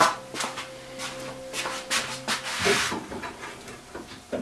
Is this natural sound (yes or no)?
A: yes